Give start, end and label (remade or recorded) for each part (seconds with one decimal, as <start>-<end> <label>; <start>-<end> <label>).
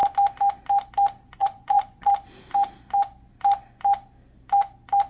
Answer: 0.0-1.4 recorded; 1.4-2.1 remade; 2.1-5.1 recorded